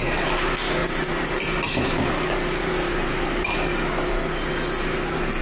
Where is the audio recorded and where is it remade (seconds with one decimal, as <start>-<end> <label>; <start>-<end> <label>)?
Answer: 0.0-0.8 recorded; 0.8-4.0 remade; 4.0-5.4 recorded